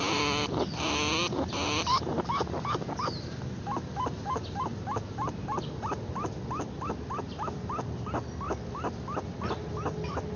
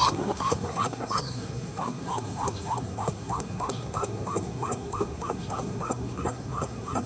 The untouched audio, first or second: first